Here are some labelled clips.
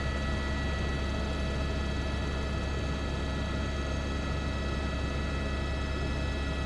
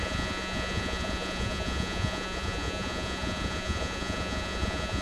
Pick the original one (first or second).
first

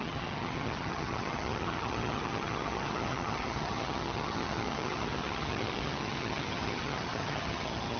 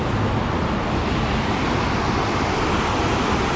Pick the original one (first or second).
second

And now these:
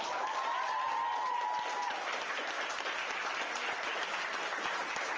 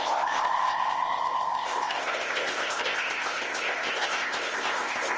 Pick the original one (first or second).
first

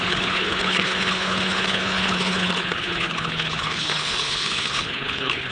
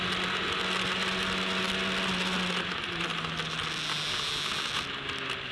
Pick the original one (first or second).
second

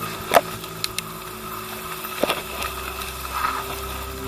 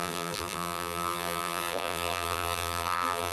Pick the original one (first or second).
first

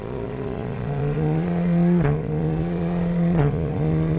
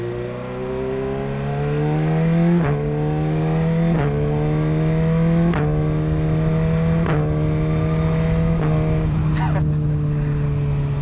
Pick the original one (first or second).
second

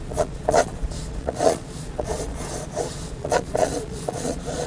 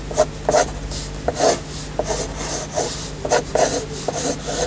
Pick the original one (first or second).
second